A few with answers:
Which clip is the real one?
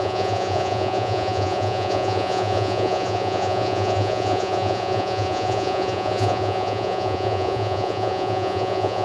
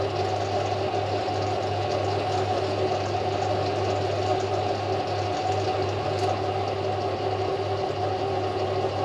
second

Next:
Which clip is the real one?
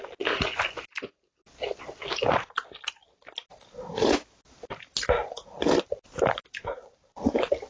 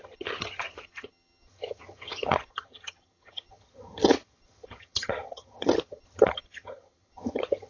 first